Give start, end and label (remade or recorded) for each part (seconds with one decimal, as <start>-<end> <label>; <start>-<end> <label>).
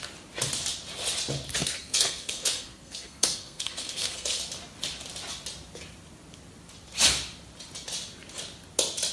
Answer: 0.0-1.6 recorded; 1.6-4.4 remade; 4.4-9.1 recorded